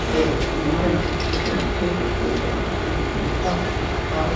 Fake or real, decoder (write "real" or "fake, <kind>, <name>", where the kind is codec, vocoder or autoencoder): real